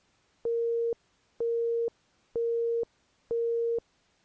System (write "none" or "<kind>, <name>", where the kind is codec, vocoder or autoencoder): none